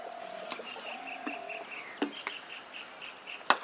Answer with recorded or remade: recorded